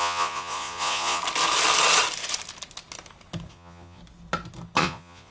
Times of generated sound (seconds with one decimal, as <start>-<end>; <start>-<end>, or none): 0.0-1.2; 3.5-4.0; 4.8-5.3